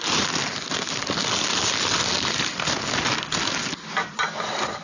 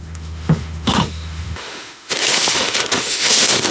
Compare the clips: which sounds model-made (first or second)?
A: second